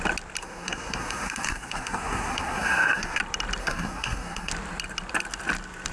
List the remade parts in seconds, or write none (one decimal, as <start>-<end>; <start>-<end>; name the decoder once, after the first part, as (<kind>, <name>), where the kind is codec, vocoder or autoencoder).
0.4-3.2 (codec, SNAC); 3.6-4.5